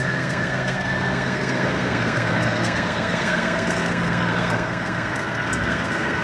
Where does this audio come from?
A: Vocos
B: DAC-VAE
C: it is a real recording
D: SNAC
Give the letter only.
D